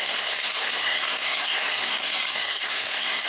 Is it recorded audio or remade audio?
remade